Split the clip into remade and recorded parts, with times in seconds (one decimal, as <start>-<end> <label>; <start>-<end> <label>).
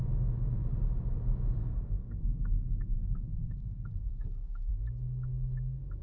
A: 0.0-1.6 recorded; 1.6-4.7 remade; 4.7-6.0 recorded